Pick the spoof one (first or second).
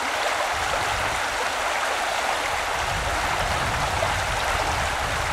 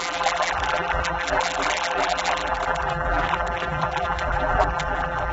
second